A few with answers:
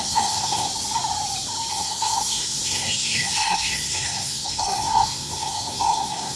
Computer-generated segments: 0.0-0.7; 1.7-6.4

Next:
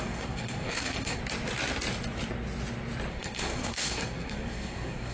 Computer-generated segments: 0.0-1.2; 3.1-5.1